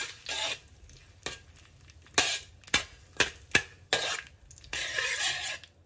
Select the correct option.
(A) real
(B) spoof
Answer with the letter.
A